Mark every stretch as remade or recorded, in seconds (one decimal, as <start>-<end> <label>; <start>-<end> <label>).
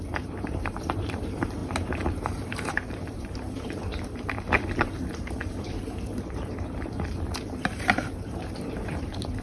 0.0-9.4 remade